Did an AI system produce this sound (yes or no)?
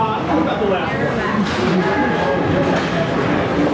no